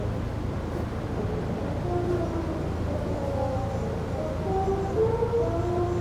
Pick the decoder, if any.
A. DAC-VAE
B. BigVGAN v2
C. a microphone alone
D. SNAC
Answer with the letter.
C